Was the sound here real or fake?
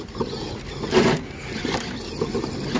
real